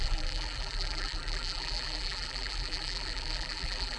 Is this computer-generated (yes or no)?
yes